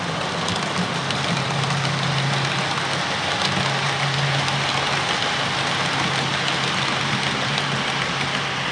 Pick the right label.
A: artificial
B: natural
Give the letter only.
B